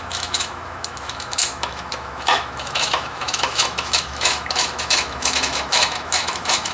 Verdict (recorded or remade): remade